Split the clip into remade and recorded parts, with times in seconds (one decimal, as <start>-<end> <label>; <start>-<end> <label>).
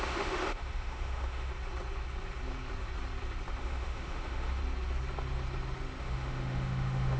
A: 0.0-1.5 remade; 1.5-3.6 recorded; 3.6-4.6 remade; 4.6-6.0 recorded; 6.0-7.2 remade